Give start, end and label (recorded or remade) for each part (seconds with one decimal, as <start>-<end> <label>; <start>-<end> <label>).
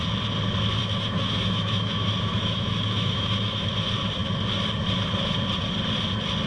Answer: 0.0-0.8 recorded; 0.8-3.7 remade; 3.7-6.5 recorded